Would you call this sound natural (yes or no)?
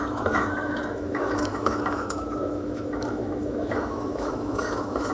no